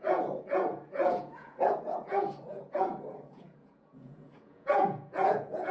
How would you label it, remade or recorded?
remade